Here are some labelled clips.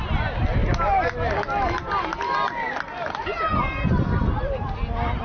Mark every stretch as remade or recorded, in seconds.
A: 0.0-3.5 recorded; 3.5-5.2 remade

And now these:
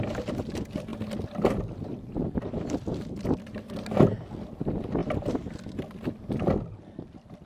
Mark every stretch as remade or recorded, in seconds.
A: 0.0-7.5 recorded

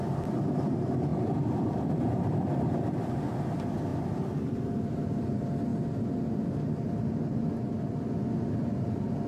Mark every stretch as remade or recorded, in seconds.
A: 0.0-9.3 recorded

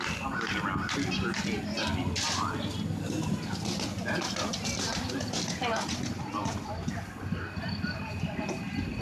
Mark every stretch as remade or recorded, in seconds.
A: 0.0-4.5 recorded; 4.5-5.6 remade; 5.6-9.0 recorded